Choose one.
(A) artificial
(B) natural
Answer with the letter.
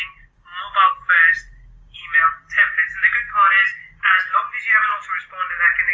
B